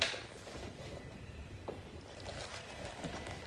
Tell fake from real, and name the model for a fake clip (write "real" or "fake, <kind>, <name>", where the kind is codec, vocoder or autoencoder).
real